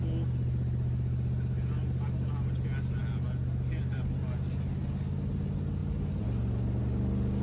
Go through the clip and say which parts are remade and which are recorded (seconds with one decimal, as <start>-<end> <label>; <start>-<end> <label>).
0.0-7.4 recorded